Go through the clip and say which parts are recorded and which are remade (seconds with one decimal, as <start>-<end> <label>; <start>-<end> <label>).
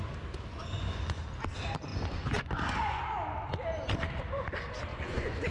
0.0-0.6 recorded; 0.6-1.2 remade; 1.2-1.9 recorded; 1.9-3.0 remade; 3.0-4.9 recorded; 4.9-5.5 remade